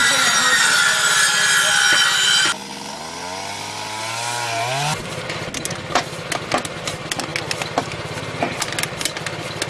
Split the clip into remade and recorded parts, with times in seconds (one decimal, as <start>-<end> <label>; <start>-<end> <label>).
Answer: 0.0-9.7 recorded